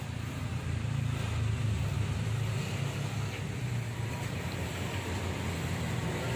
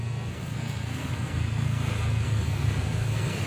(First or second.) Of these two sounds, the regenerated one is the second